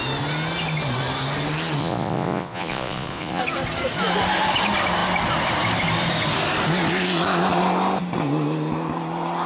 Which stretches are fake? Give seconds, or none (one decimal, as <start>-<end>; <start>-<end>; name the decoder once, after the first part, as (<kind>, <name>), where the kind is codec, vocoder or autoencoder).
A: 1.8-3.4 (vocoder, Vocos)